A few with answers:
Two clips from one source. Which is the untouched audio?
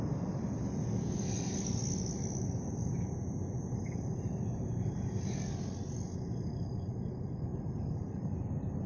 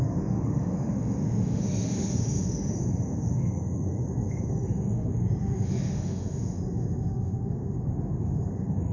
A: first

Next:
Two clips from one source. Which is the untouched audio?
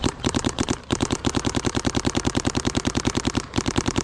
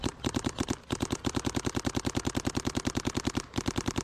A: second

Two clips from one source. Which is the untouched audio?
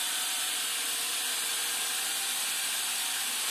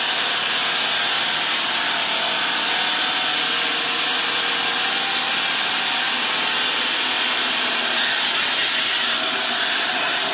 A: second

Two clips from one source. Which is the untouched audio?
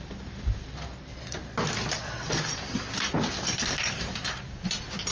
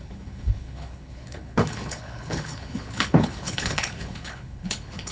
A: first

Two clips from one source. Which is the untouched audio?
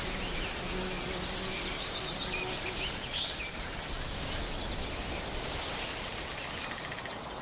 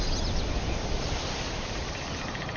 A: first